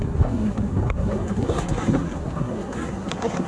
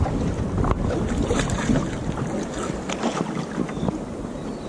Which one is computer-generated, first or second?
first